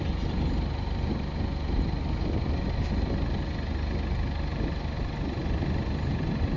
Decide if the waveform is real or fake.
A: real